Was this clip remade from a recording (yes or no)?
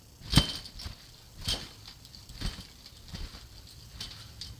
no